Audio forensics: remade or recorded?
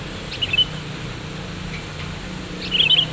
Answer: recorded